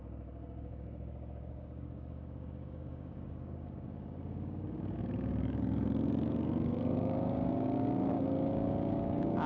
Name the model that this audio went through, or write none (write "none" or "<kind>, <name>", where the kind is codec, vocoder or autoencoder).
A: codec, DAC